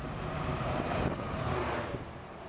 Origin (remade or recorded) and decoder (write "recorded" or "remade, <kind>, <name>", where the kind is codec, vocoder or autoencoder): remade, vocoder, BigVGAN v2